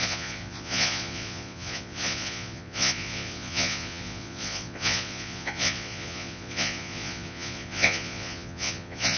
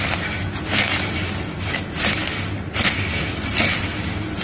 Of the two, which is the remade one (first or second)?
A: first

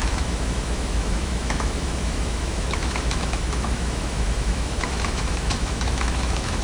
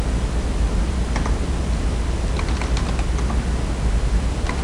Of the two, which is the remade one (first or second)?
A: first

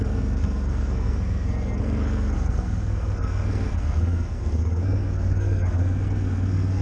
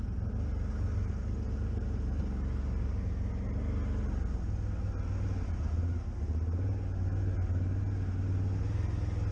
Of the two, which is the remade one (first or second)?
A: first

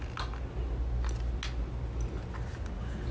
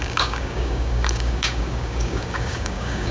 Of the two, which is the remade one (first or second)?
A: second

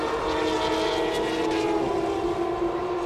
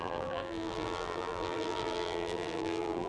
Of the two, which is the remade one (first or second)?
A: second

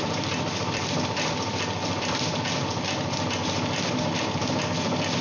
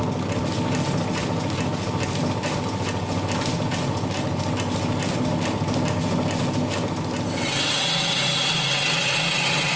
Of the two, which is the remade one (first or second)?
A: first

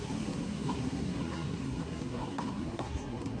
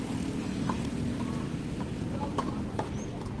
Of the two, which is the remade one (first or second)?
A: first